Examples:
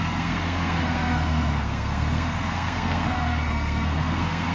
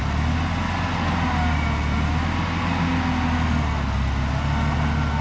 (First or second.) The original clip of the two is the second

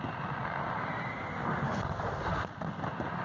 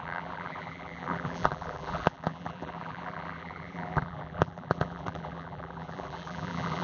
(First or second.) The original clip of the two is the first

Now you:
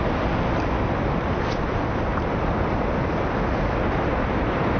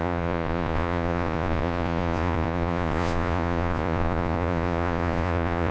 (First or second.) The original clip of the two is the first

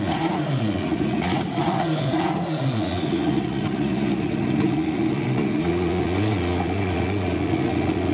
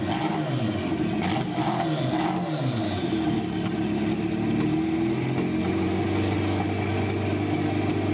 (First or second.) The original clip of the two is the second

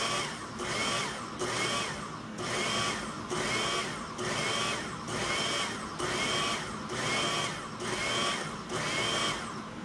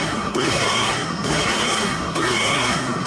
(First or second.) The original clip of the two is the first